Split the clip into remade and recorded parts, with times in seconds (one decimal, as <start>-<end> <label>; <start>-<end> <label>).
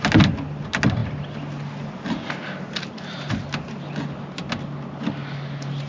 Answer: 0.0-5.9 recorded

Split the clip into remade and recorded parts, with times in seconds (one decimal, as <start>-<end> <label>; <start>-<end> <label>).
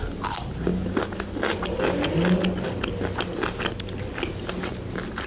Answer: 0.0-5.3 recorded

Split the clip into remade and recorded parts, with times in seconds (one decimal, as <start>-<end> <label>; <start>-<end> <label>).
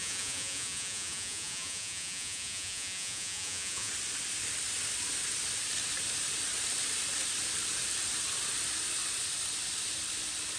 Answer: 0.0-3.9 remade; 3.9-10.6 recorded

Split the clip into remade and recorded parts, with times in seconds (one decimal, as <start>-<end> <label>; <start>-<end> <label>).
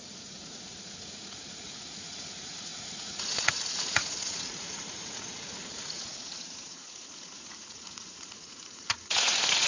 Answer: 0.0-9.7 remade